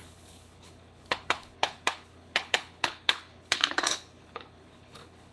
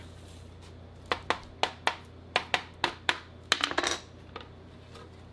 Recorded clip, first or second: second